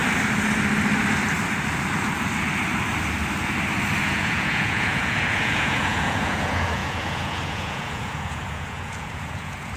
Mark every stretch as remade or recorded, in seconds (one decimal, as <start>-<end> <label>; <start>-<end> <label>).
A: 0.0-4.0 recorded; 4.0-9.8 remade